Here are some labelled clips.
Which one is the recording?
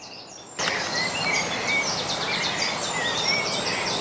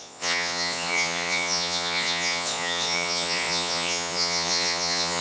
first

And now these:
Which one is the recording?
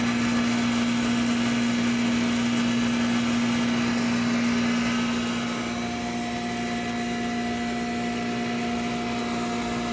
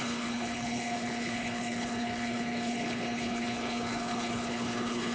first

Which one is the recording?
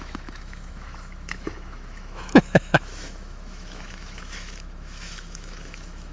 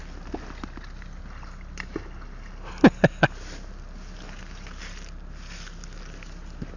second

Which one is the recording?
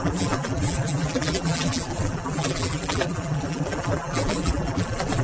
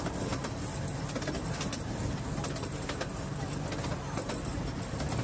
second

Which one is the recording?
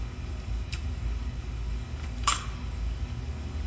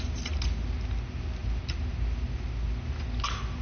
second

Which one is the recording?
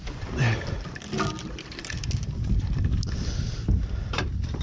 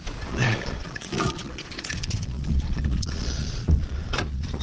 first